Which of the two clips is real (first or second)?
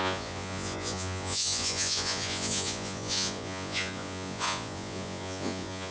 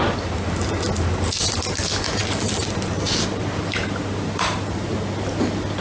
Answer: second